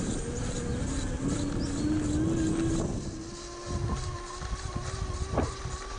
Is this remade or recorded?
recorded